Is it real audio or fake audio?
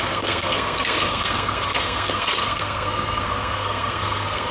fake